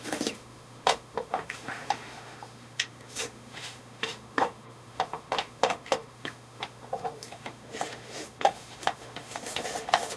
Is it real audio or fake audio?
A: fake